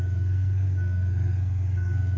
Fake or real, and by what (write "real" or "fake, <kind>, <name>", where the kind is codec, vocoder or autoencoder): fake, codec, SNAC